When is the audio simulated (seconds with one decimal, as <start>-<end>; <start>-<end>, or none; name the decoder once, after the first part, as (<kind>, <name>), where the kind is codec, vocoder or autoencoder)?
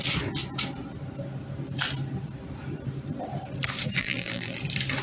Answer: 4.0-4.6 (vocoder, BigVGAN v2)